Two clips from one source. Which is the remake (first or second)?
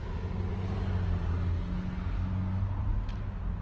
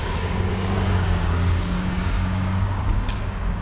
second